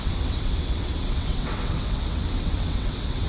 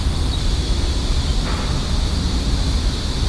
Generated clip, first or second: first